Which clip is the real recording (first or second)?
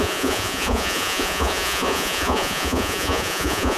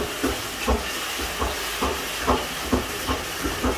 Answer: second